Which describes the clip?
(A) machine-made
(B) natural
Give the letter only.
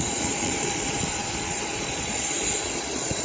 A